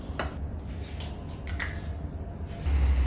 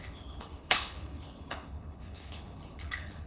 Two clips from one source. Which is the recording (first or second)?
first